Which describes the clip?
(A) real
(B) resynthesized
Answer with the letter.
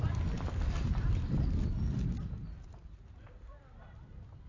A